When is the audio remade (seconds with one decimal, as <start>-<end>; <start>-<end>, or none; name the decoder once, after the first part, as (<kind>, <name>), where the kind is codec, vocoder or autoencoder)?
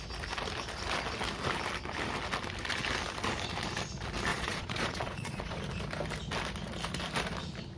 4.3-5.6 (vocoder, Vocos)